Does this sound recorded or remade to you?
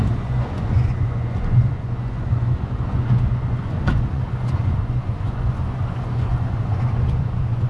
remade